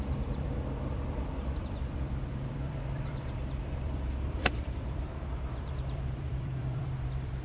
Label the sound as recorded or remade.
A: remade